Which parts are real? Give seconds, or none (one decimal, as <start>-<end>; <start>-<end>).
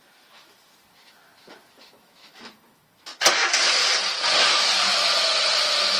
3.1-4.5; 5.0-6.0